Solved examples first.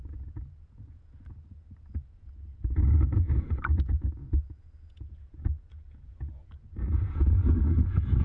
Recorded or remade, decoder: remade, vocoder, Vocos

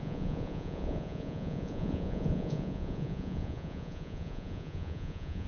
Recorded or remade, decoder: remade, vocoder, Vocos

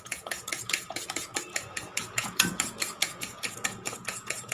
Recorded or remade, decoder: remade, vocoder, Vocos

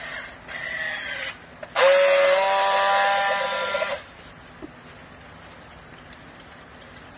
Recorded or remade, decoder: recorded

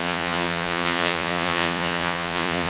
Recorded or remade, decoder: remade, vocoder, Vocos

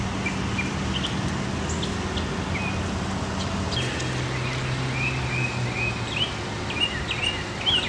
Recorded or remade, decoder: recorded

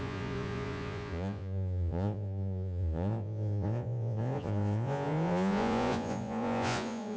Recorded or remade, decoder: remade, vocoder, Vocos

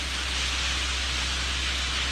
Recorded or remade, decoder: recorded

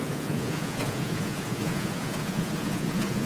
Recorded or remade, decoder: remade, vocoder, Vocos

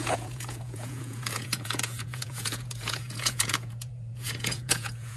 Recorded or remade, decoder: remade, vocoder, Vocos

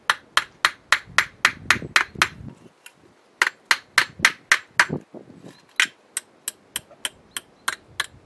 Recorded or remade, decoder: recorded